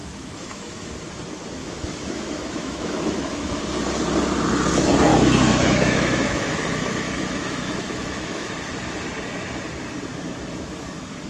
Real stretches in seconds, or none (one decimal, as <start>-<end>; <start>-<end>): 0.9-1.6; 3.6-5.1; 8.5-11.3

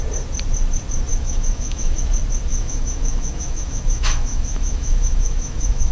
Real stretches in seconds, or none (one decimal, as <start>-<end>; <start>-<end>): 0.0-1.1; 2.0-2.5

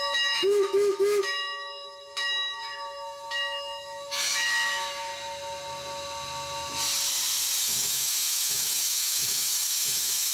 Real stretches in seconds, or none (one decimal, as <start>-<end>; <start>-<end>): 5.1-7.6

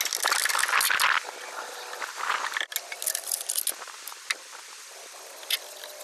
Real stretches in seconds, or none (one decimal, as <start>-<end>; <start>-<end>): 0.0-6.0